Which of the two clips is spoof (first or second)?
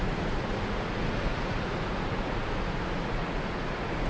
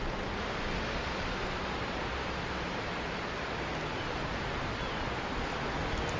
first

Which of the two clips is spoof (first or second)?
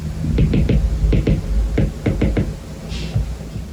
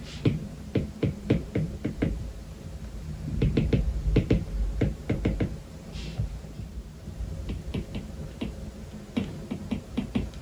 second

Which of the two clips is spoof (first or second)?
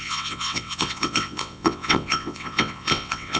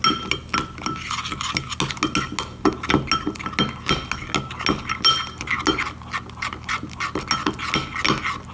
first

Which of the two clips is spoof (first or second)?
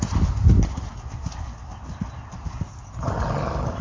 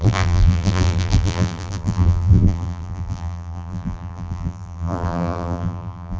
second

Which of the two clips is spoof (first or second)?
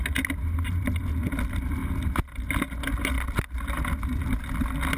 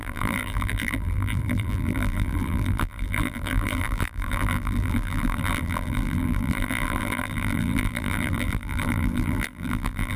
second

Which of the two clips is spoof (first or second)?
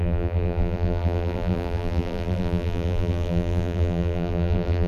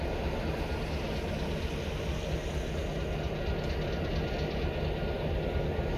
first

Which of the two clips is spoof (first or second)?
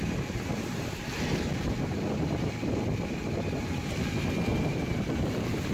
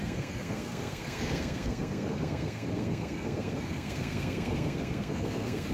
second